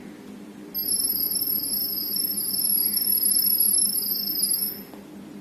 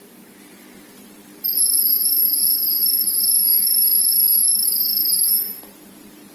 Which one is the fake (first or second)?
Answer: second